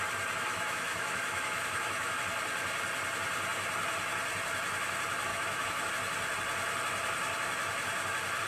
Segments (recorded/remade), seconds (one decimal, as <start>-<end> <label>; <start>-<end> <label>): 0.0-0.5 recorded; 0.5-2.1 remade; 2.1-5.3 recorded; 5.3-5.9 remade; 5.9-8.5 recorded

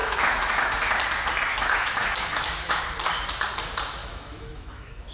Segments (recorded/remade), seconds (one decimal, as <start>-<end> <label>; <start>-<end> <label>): 0.0-0.9 remade; 0.9-1.5 recorded; 1.5-2.8 remade; 2.8-4.0 recorded; 4.0-5.1 remade

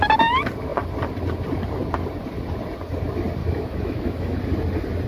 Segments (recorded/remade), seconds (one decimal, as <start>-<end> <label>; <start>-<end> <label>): 0.0-3.4 recorded; 3.4-4.4 remade; 4.4-5.1 recorded

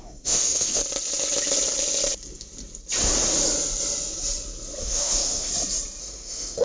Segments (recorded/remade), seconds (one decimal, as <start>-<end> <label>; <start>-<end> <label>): 0.0-0.8 remade; 0.8-4.8 recorded; 4.8-5.5 remade; 5.5-6.0 recorded; 6.0-6.6 remade

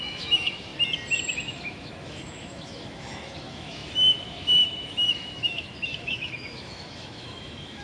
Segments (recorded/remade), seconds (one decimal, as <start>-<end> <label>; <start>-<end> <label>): 0.0-0.7 remade; 0.7-1.3 recorded; 1.3-7.8 remade

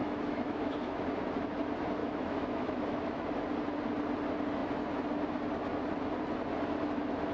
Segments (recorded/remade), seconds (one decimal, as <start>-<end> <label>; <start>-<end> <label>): 0.0-1.0 remade; 1.0-2.0 recorded; 2.0-3.3 remade; 3.3-7.3 recorded

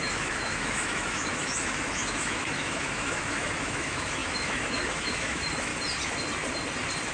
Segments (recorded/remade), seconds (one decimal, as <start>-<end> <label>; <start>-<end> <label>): 0.0-5.7 remade; 5.7-7.1 recorded